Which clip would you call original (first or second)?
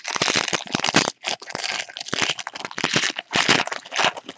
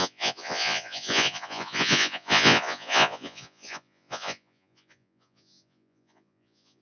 first